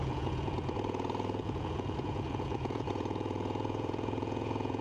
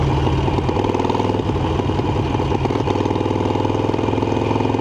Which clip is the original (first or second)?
second